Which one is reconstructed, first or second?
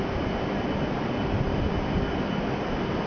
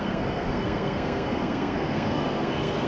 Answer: second